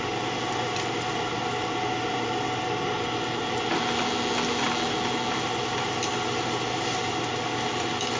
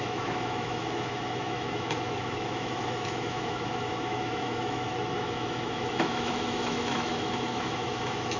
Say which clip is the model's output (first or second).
second